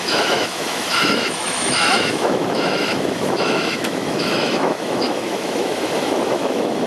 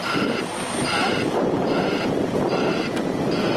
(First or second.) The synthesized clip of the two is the first